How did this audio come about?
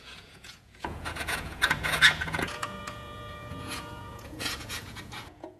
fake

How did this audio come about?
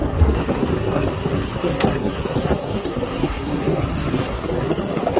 fake